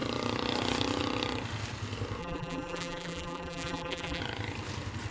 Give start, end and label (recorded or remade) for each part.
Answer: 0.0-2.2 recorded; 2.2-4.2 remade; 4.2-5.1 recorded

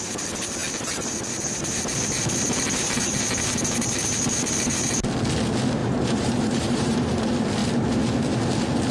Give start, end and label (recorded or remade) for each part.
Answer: 0.0-5.8 recorded; 5.8-7.1 remade; 7.1-8.9 recorded

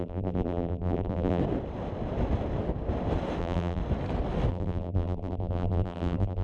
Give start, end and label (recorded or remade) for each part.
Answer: 0.0-1.4 remade; 1.4-3.4 recorded; 3.4-3.8 remade; 3.8-4.5 recorded; 4.5-6.4 remade

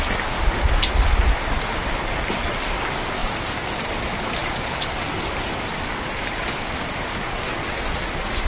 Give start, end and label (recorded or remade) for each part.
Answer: 0.0-3.2 recorded; 3.2-3.9 remade; 3.9-4.4 recorded; 4.4-5.0 remade; 5.0-8.5 recorded